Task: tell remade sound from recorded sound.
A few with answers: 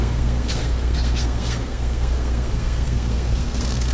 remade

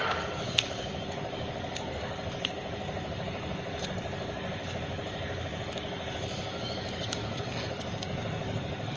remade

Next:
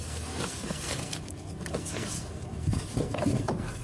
remade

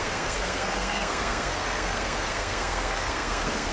remade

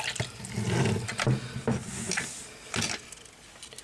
recorded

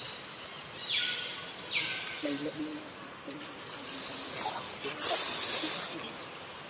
recorded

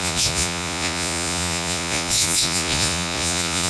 remade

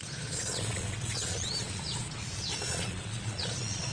remade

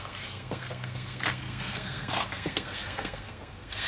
remade